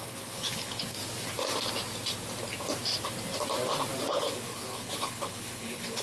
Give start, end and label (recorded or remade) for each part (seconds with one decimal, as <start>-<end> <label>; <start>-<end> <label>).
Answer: 0.0-1.0 remade; 1.0-4.1 recorded; 4.1-6.0 remade